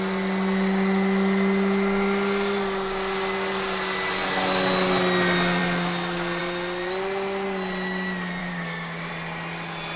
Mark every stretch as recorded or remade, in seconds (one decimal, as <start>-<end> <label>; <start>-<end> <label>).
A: 0.0-8.4 recorded; 8.4-9.1 remade; 9.1-10.0 recorded